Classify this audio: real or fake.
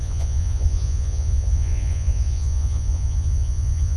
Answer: fake